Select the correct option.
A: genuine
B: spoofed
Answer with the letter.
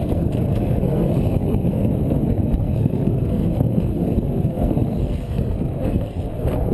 B